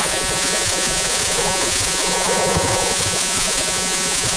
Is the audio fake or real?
fake